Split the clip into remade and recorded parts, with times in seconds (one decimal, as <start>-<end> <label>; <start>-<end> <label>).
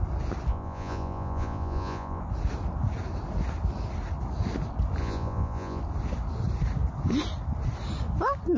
0.0-0.5 recorded; 0.5-2.2 remade; 2.2-5.0 recorded; 5.0-5.8 remade; 5.8-8.6 recorded